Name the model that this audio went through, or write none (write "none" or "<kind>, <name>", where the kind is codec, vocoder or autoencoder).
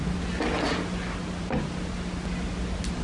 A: none